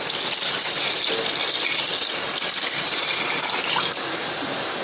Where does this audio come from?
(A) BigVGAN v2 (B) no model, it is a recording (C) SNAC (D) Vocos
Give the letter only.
B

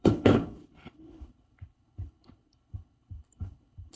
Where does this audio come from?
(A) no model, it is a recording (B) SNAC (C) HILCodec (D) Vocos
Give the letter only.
C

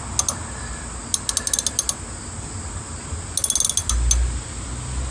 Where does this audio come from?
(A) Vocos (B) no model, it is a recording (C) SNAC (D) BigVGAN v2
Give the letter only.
B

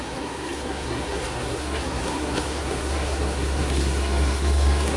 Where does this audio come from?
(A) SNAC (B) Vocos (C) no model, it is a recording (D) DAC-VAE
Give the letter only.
A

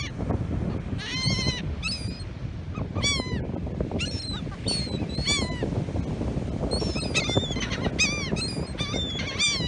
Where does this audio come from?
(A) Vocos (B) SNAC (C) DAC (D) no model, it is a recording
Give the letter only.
D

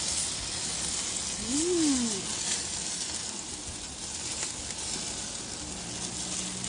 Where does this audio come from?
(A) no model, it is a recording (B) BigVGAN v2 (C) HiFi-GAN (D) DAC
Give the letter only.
A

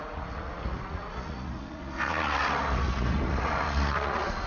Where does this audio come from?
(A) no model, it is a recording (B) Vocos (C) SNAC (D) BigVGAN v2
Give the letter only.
B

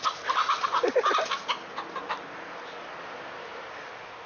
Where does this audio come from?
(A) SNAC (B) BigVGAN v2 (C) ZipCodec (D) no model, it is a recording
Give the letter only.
D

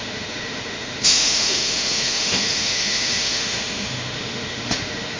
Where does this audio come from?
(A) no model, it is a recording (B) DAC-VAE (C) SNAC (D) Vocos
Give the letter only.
B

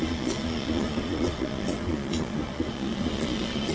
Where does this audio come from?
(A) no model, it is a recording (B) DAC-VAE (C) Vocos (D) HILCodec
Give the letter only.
C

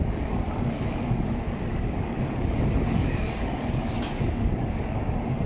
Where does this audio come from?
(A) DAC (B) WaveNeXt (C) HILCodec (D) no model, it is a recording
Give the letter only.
A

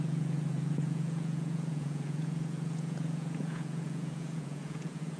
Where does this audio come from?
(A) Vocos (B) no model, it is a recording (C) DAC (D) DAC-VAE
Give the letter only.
A